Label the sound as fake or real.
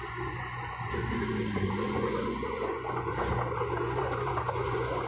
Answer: fake